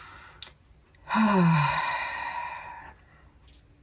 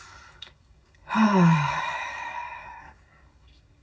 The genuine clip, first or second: first